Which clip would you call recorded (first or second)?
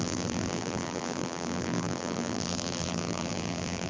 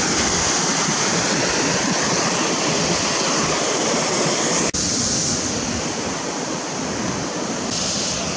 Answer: second